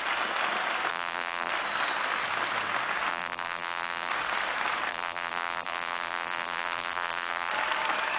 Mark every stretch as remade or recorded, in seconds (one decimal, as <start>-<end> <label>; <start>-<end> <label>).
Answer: 0.0-0.9 recorded; 0.9-1.5 remade; 1.5-3.1 recorded; 3.1-4.1 remade; 4.1-4.9 recorded; 4.9-7.5 remade; 7.5-8.2 recorded

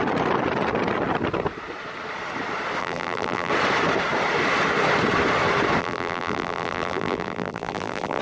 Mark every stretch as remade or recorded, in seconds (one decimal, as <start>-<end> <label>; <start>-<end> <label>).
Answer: 0.0-2.8 recorded; 2.8-3.5 remade; 3.5-5.8 recorded; 5.8-8.2 remade

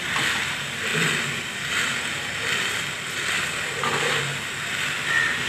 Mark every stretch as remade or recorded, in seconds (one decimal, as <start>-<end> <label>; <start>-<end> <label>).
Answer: 0.0-5.5 remade